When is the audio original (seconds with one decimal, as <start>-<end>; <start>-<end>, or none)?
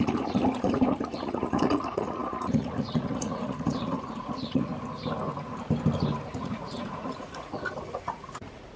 4.7-6.3